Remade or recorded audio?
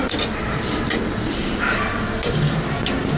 recorded